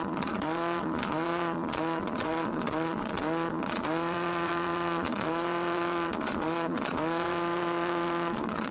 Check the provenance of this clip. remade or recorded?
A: remade